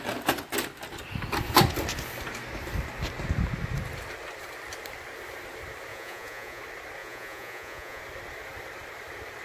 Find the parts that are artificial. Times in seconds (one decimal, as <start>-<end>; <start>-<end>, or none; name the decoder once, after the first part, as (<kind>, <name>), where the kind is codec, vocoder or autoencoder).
5.9-6.6 (vocoder, Vocos); 7.0-8.0